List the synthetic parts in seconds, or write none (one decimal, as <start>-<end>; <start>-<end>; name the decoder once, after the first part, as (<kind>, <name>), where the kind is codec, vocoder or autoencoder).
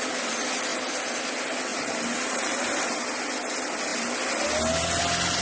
1.7-2.6 (vocoder, BigVGAN v2)